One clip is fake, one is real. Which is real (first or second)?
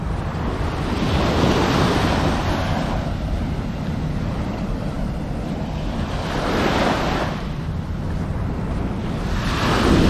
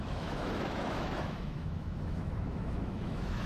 first